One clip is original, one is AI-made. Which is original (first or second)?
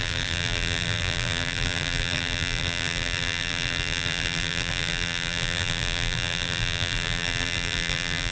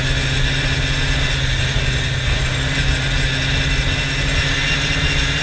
second